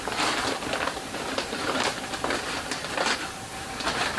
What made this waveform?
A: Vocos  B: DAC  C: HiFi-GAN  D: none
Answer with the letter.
D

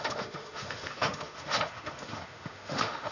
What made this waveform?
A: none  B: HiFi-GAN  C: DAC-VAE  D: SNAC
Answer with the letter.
C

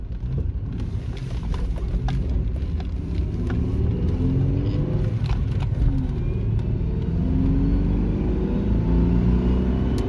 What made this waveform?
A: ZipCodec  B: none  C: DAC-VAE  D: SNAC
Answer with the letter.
B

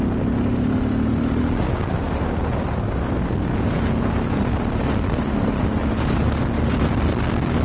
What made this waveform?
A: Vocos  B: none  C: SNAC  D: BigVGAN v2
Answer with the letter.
B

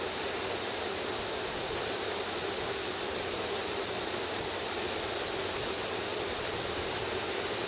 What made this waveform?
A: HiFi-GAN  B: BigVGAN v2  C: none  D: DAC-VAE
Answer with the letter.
C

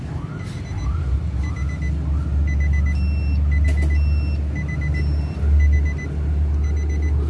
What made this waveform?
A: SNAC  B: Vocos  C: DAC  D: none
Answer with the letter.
D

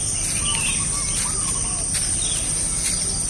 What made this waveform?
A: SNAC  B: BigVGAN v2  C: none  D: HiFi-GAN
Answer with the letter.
C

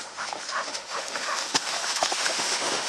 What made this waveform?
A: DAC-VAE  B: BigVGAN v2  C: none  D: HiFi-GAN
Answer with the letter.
A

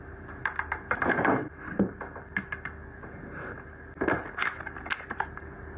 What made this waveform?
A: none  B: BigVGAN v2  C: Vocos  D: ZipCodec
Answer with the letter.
A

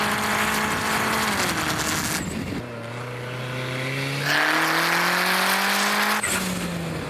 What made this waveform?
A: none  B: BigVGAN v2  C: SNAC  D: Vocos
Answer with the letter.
A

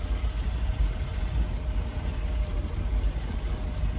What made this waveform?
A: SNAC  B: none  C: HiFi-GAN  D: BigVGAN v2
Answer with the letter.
B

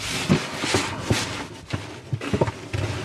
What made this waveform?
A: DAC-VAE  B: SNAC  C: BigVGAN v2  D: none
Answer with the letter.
D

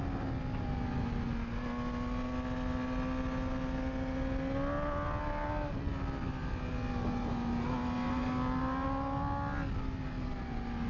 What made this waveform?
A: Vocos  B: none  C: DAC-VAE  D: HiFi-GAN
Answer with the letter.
B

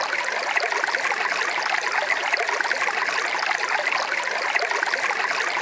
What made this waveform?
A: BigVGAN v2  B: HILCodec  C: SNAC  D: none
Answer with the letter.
D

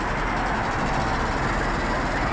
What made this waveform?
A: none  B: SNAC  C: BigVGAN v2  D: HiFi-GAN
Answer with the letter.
A